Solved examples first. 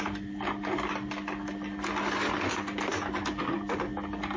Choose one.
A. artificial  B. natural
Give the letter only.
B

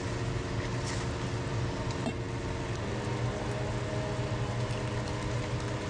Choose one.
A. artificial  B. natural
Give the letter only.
B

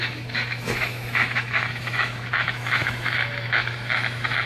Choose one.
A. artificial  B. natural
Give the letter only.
A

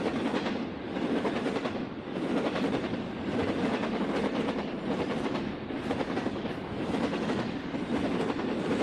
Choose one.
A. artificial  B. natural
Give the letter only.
A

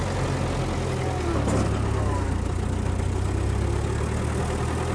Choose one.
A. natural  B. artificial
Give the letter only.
A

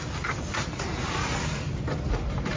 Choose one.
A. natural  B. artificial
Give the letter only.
A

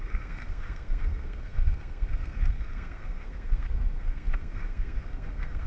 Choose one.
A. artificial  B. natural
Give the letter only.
A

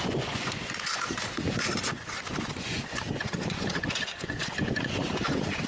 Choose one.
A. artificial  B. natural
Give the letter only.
A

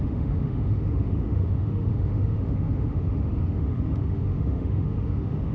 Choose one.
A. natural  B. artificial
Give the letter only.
B